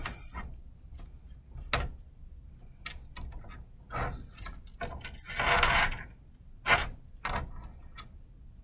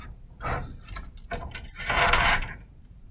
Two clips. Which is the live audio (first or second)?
first